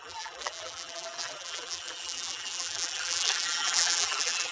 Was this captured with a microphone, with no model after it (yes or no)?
no